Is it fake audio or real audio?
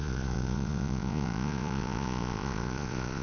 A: fake